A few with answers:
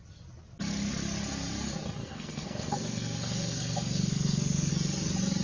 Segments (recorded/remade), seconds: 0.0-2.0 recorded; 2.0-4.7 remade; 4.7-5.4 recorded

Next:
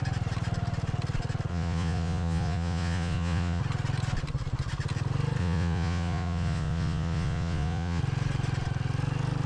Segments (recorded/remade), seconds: 0.0-1.5 recorded; 1.5-3.6 remade; 3.6-5.4 recorded; 5.4-8.0 remade; 8.0-9.5 recorded

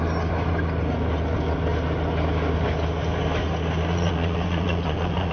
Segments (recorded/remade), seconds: 0.0-3.9 recorded; 3.9-5.3 remade

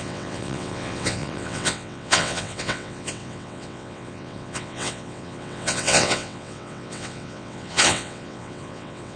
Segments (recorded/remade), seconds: 0.0-9.2 remade

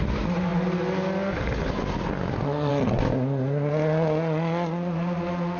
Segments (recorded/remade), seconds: 0.0-5.6 recorded